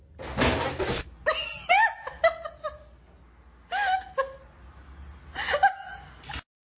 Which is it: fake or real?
real